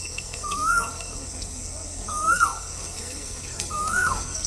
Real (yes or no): no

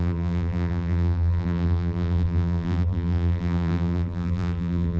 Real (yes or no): no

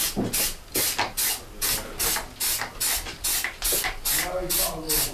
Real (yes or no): yes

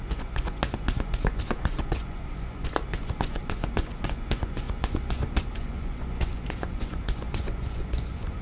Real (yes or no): no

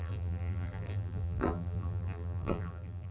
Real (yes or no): no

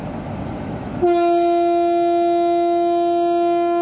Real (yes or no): yes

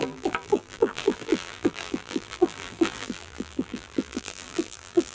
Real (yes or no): no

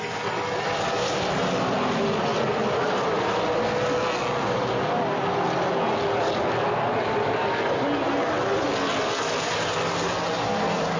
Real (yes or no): yes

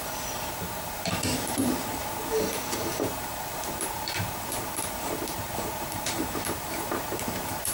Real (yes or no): no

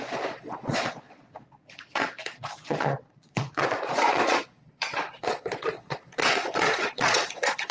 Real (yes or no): no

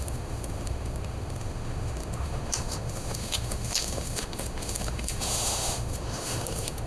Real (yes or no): no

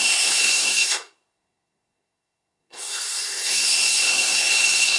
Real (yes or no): no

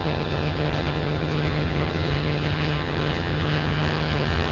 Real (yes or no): no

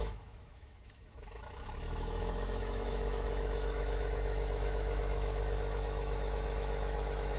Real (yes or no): no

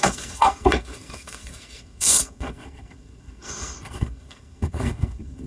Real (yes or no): no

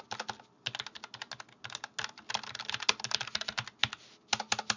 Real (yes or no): yes